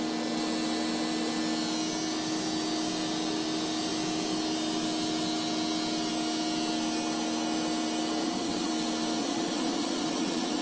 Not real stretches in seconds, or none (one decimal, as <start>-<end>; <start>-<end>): 8.2-8.7; 9.2-10.6